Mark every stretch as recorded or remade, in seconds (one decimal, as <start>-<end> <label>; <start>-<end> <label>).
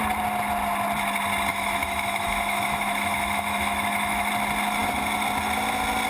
0.0-1.5 recorded; 1.5-4.3 remade; 4.3-6.1 recorded